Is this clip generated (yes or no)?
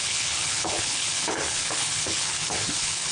yes